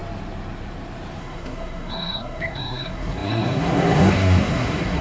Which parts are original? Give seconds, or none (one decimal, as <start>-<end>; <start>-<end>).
0.0-1.2